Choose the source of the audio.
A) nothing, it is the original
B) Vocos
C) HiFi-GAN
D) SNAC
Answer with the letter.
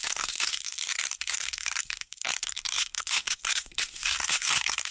D